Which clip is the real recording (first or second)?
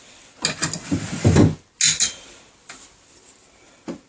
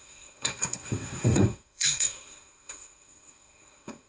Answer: first